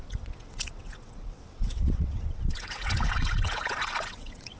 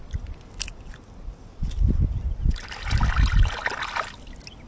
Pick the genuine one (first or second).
second